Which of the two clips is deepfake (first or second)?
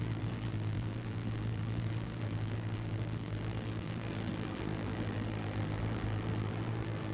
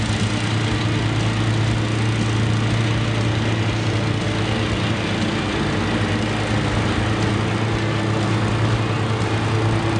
first